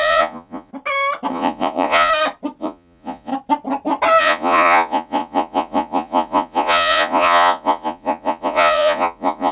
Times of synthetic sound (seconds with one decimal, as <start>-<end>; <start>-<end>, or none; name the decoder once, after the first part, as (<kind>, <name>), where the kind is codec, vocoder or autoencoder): 0.0-0.7 (vocoder, Vocos); 1.3-2.1; 2.6-3.3; 4.2-9.5